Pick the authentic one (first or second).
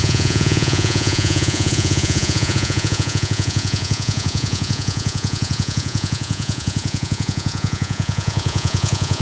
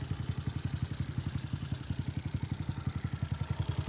second